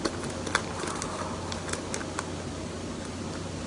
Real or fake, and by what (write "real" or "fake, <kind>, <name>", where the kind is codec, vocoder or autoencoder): real